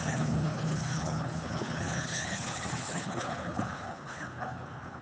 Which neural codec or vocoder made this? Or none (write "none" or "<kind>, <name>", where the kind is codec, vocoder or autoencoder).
codec, HILCodec